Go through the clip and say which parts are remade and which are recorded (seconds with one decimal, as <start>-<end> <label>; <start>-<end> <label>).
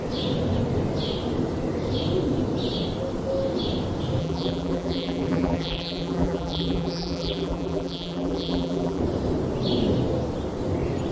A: 0.0-4.2 recorded; 4.2-9.0 remade; 9.0-11.1 recorded